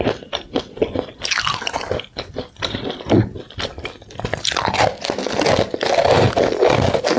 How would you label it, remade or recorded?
recorded